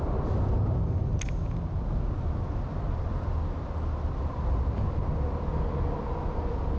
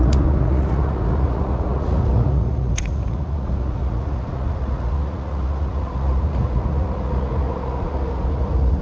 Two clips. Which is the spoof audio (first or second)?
second